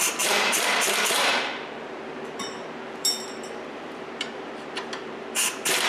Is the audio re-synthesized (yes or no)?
yes